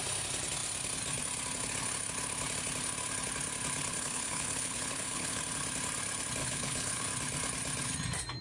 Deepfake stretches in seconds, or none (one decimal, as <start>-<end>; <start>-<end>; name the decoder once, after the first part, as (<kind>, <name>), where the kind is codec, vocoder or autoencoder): 3.9-5.4 (codec, HILCodec); 6.4-7.0

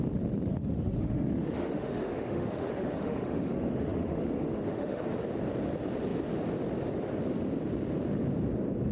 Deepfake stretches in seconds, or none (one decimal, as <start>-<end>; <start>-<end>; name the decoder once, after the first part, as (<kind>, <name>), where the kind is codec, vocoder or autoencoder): 0.5-5.0 (autoencoder, DAC-VAE)

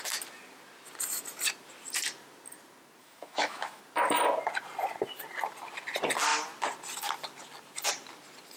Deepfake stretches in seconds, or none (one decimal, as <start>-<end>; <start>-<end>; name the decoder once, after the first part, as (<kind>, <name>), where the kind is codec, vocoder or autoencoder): 3.0-3.8 (autoencoder, DAC-VAE)

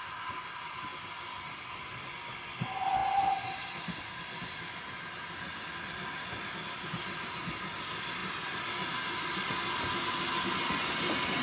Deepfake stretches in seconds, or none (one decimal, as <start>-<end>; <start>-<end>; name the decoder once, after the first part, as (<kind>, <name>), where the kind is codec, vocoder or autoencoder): none

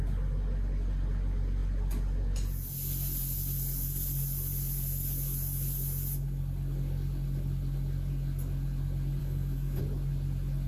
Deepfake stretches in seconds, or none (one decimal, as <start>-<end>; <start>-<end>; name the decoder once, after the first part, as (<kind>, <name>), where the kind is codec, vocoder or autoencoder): 9.2-9.8 (codec, DAC)